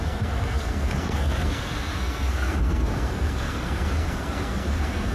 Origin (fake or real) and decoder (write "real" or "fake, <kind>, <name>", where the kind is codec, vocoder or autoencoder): fake, codec, SNAC